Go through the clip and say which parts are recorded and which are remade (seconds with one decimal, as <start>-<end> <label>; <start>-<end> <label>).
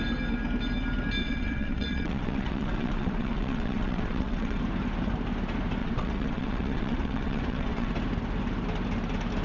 0.0-1.2 recorded; 1.2-4.6 remade; 4.6-5.8 recorded; 5.8-7.9 remade; 7.9-9.4 recorded